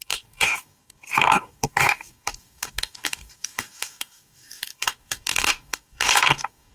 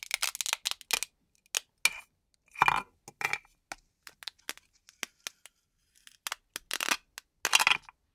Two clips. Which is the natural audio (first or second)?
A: second